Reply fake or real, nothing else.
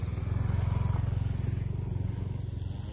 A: real